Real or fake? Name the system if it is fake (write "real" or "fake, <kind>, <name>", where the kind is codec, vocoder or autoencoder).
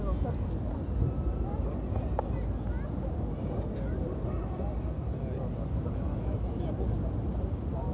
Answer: real